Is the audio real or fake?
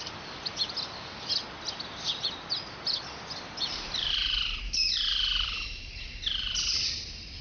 real